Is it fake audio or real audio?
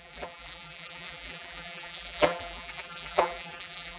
fake